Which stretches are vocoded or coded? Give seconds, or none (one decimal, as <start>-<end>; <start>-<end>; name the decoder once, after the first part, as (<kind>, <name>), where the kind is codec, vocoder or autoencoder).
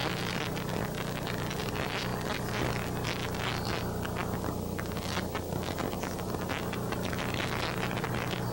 none